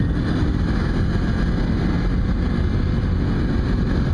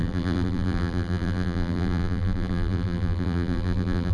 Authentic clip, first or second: first